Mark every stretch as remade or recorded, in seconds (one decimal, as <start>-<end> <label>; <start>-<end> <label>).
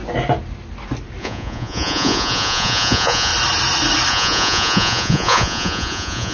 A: 0.0-1.2 recorded; 1.2-3.3 remade; 3.3-4.1 recorded; 4.1-6.3 remade